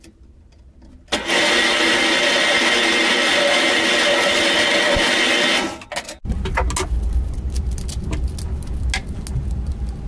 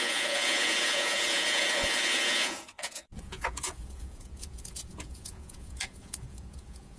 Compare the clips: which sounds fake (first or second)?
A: second